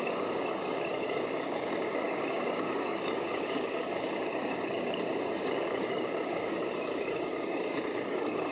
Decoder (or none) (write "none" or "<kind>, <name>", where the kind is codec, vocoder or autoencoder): codec, DAC